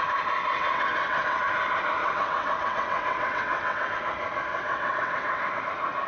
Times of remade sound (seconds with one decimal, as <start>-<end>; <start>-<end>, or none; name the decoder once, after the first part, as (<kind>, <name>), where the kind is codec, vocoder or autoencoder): 0.5-1.4 (vocoder, WaveNeXt); 2.0-3.9; 4.5-5.6